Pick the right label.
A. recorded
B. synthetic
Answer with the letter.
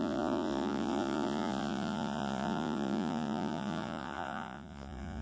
B